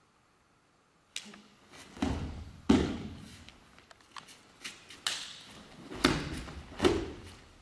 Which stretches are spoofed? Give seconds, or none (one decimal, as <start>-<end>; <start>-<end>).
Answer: none